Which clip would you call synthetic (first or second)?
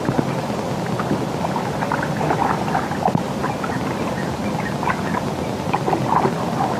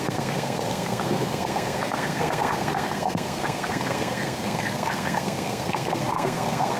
second